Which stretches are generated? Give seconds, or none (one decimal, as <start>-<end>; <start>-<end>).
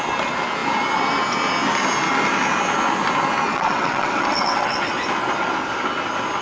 3.5-4.9